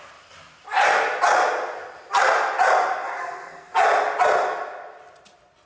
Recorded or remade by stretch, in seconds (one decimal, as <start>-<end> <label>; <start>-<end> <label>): 0.0-3.1 recorded; 3.1-3.7 remade; 3.7-5.7 recorded